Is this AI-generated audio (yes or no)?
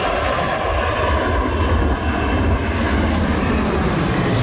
no